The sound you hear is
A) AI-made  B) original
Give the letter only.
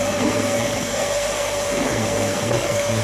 A